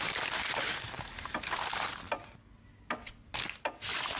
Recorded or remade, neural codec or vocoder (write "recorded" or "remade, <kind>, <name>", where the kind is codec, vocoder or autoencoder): recorded